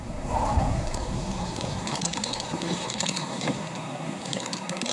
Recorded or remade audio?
remade